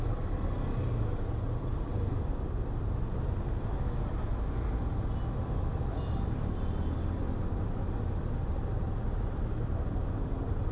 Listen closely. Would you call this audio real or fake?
real